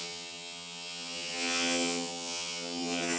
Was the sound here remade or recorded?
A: remade